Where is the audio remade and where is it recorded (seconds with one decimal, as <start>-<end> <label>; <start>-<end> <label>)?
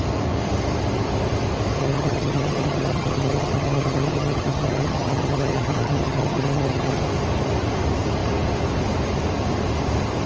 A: 0.0-1.8 recorded; 1.8-7.0 remade; 7.0-10.3 recorded